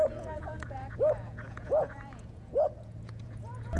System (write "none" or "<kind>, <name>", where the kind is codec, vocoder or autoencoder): vocoder, Vocos